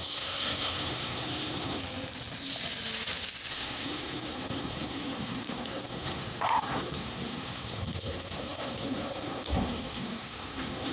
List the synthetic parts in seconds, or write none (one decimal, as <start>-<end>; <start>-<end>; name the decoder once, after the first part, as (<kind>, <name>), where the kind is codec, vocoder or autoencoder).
0.0-1.8 (codec, SNAC); 3.5-10.9